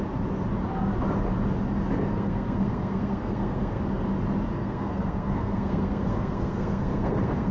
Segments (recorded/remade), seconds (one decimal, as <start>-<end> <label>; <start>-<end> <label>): 0.0-2.1 recorded; 2.1-3.8 remade; 3.8-4.6 recorded; 4.6-7.5 remade

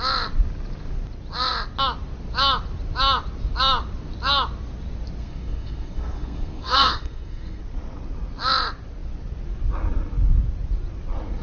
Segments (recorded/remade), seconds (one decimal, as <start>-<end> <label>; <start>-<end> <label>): 0.0-5.2 recorded; 5.2-7.6 remade; 7.6-11.4 recorded

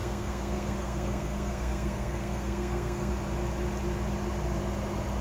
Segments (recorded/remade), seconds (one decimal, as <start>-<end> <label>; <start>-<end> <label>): 0.0-3.1 remade; 3.1-5.2 recorded

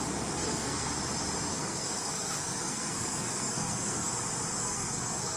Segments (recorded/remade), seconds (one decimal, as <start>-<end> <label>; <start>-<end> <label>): 0.0-0.4 recorded; 0.4-0.9 remade; 0.9-1.5 recorded; 1.5-4.1 remade; 4.1-4.6 recorded; 4.6-5.4 remade

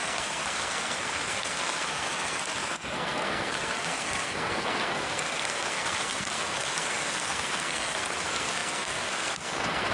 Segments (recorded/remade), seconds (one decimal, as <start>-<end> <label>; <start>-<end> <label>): 0.0-9.9 remade

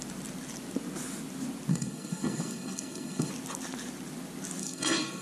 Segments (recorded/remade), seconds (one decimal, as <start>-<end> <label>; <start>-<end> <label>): 0.0-1.7 recorded; 1.7-3.3 remade; 3.3-4.6 recorded; 4.6-5.2 remade

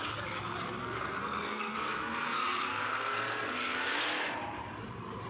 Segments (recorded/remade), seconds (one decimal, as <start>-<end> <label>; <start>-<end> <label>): 0.0-0.8 recorded; 0.8-4.0 remade; 4.0-5.3 recorded

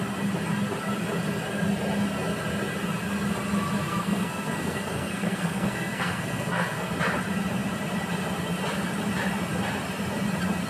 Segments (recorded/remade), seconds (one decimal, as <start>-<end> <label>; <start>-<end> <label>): 0.0-3.8 recorded; 3.8-6.9 remade; 6.9-10.7 recorded